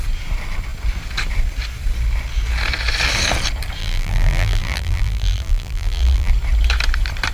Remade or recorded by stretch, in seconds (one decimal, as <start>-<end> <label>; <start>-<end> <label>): 0.0-3.8 recorded; 3.8-6.3 remade; 6.3-7.3 recorded